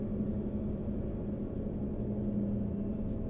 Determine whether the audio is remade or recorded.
recorded